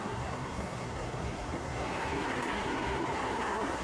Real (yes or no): no